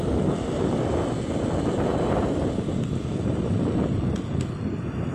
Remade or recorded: recorded